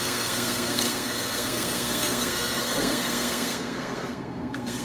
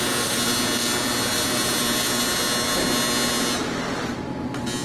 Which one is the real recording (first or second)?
second